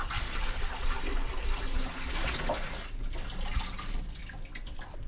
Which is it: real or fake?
real